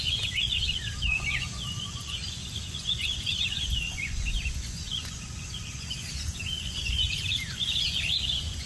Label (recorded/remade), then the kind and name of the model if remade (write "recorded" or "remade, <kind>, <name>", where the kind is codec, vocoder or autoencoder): remade, vocoder, Vocos